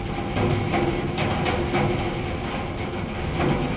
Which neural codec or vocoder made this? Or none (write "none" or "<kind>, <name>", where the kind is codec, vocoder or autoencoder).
none